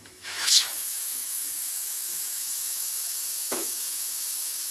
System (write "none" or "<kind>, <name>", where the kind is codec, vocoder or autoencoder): autoencoder, DAC-VAE